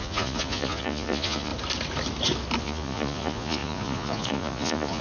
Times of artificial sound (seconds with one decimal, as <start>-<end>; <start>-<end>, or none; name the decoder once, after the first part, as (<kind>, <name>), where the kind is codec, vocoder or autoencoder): 0.0-1.5 (vocoder, Vocos); 2.6-5.0